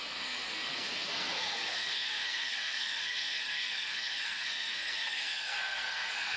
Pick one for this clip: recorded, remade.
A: remade